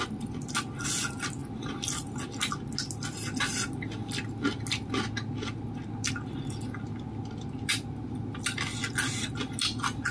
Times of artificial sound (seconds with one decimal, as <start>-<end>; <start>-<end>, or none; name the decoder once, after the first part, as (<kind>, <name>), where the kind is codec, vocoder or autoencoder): none